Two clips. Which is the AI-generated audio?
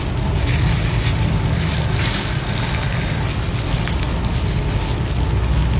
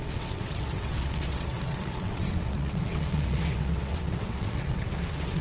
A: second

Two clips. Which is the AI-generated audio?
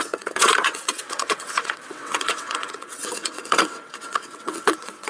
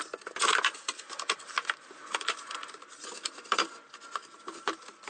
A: first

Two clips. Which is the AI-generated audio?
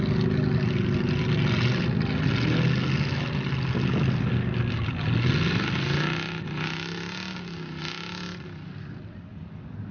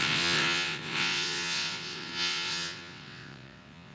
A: second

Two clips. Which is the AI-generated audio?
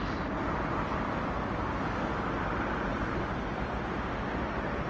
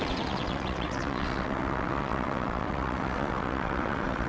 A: second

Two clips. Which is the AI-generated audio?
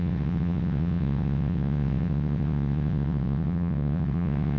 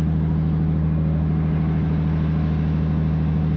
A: first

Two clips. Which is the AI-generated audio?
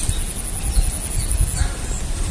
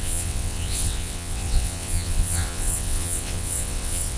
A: second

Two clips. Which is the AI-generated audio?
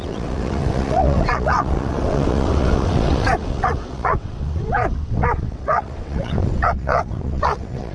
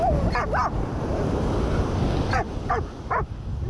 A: first